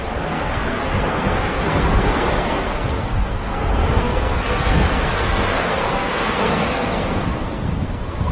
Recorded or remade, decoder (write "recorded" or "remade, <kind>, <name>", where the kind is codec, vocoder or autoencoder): remade, codec, SNAC